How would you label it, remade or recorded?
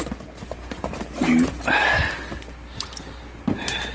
recorded